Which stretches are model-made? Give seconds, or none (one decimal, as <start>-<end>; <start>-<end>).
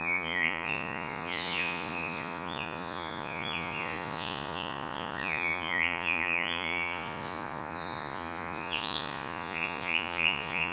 0.0-10.7